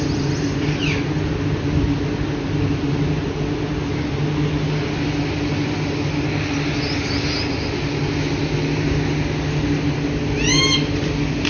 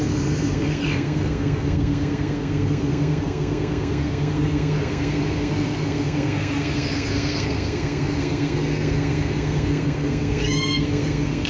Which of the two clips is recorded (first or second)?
first